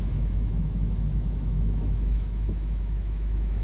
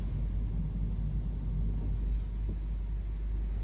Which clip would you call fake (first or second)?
first